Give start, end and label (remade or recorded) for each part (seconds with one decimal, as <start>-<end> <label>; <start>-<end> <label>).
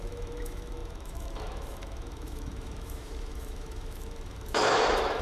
0.0-5.2 remade